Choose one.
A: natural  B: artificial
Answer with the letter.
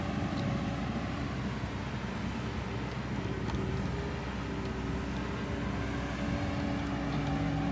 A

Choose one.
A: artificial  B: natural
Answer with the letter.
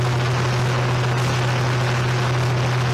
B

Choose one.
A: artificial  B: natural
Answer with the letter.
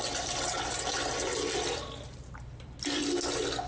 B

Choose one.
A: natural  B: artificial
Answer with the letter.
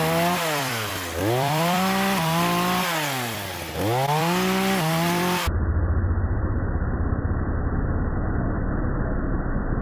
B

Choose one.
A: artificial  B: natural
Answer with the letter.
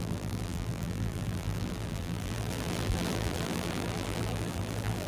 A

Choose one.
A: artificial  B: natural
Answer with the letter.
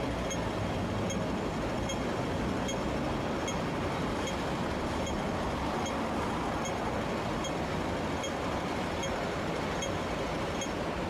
B